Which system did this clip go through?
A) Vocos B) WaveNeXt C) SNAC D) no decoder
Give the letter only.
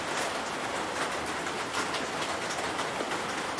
D